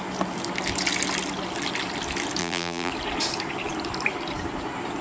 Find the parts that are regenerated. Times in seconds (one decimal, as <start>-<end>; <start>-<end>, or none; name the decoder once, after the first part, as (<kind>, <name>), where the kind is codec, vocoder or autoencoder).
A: 2.4-2.9 (vocoder, BigVGAN v2)